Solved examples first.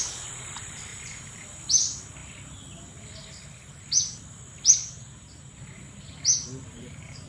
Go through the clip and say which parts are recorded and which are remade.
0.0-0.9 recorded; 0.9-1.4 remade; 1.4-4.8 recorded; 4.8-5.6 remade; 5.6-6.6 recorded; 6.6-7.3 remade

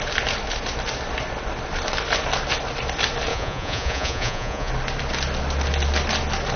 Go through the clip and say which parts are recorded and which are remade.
0.0-3.3 recorded; 3.3-4.7 remade; 4.7-6.6 recorded

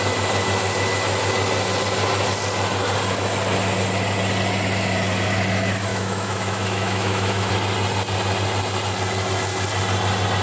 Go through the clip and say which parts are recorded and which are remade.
0.0-5.9 recorded; 5.9-7.5 remade; 7.5-10.4 recorded

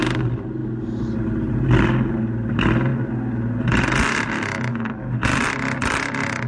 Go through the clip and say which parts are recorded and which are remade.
0.0-6.5 recorded

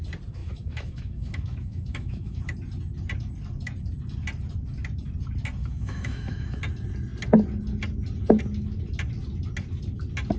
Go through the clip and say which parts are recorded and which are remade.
0.0-0.4 recorded; 0.4-2.4 remade; 2.4-5.6 recorded; 5.6-6.6 remade; 6.6-10.4 recorded

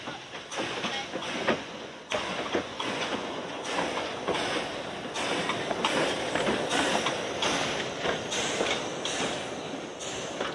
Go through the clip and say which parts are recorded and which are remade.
0.0-1.2 recorded; 1.2-4.6 remade; 4.6-10.5 recorded

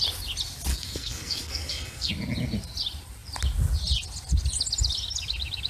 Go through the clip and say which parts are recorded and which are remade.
0.0-0.7 recorded; 0.7-2.1 remade; 2.1-5.7 recorded

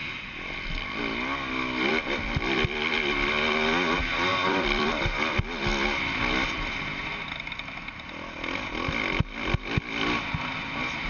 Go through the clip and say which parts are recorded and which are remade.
0.0-1.9 recorded; 1.9-2.9 remade; 2.9-4.3 recorded; 4.3-4.9 remade; 4.9-11.1 recorded